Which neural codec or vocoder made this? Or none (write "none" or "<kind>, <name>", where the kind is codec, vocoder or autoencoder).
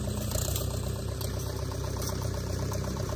vocoder, BigVGAN v2